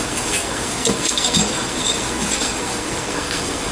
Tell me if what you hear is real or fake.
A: fake